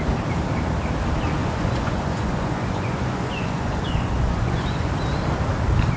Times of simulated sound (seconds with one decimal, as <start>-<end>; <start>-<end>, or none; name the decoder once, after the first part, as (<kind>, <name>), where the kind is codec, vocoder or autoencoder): 1.4-4.9 (vocoder, Vocos)